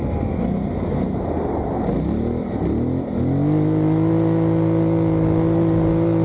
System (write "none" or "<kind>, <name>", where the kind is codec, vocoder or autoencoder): none